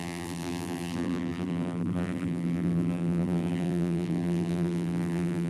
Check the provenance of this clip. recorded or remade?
remade